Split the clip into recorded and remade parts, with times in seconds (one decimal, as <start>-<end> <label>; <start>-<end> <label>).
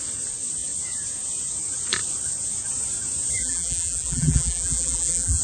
0.0-3.4 recorded; 3.4-5.4 remade